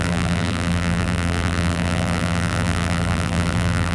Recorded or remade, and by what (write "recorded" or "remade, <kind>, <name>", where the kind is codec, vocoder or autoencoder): remade, vocoder, BigVGAN v2